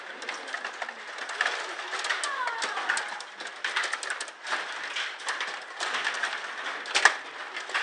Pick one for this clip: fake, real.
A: real